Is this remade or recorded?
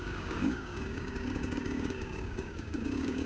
remade